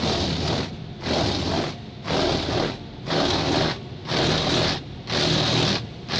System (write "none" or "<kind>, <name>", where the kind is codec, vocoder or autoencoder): none